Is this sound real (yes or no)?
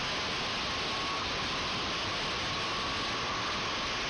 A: yes